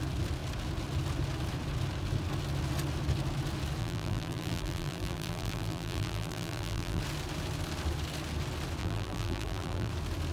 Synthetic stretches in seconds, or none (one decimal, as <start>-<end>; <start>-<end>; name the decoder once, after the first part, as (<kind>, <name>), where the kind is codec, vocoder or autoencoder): 3.8-7.0 (vocoder, BigVGAN v2); 8.8-9.9

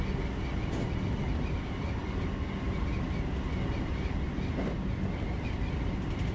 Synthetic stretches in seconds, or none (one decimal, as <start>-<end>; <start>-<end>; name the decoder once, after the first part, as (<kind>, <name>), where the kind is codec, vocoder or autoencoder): none

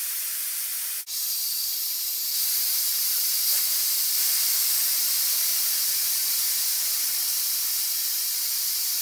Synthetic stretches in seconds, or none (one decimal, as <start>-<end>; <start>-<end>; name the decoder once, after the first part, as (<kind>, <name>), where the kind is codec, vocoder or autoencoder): 6.7-7.4 (vocoder, BigVGAN v2)